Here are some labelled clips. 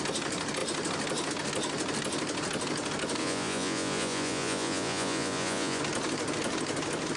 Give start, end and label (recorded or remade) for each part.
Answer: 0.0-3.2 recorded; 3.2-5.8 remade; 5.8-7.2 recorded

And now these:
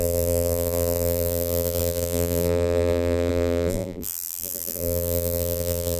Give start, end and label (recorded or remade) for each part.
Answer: 0.0-6.0 remade